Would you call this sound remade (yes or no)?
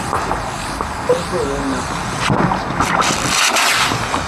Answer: no